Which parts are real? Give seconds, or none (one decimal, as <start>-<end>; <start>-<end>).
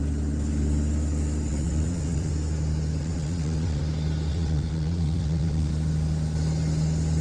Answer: 0.0-1.5; 2.3-3.0; 3.8-4.3; 5.7-7.2